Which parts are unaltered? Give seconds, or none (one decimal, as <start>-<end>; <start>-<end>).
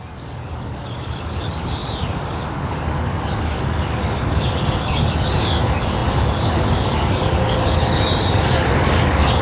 none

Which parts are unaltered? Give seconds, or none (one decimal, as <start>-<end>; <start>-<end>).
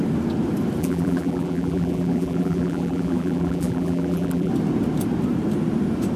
0.0-0.8; 4.5-6.2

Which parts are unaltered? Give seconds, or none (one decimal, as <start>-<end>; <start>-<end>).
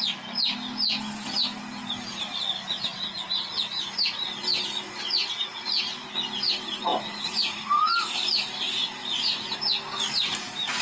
0.0-5.2; 5.8-6.9; 7.8-10.8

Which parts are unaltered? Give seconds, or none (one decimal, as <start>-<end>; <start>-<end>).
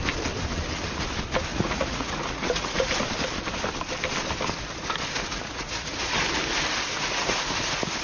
0.0-1.5; 2.9-5.3; 6.2-6.9; 7.5-8.0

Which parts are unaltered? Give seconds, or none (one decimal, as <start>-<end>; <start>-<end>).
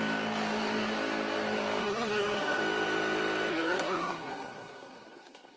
0.0-1.8; 2.6-3.5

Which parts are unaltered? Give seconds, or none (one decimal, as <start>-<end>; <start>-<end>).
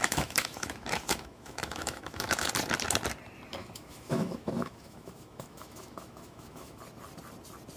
2.5-3.6; 6.8-7.8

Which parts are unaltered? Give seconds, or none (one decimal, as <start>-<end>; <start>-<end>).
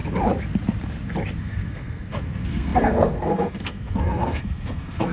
0.0-1.4